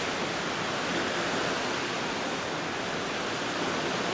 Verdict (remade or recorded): recorded